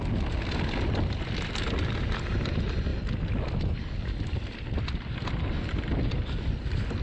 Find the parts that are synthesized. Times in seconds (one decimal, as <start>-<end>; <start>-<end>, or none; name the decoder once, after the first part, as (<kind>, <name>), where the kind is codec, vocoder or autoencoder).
none